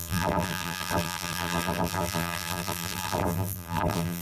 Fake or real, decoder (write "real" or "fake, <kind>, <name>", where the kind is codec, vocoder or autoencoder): fake, vocoder, BigVGAN v2